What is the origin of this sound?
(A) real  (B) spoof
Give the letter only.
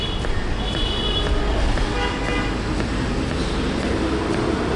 A